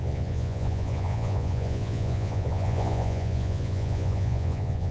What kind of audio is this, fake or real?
fake